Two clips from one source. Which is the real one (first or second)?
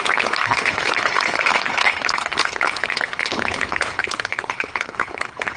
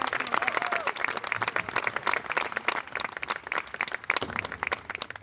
second